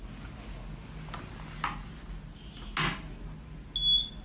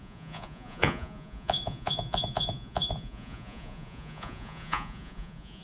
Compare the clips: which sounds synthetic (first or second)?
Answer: second